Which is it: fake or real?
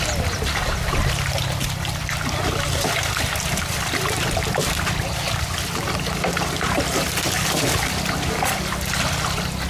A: real